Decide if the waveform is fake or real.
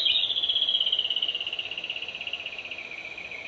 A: real